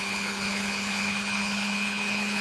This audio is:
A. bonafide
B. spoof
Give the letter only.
B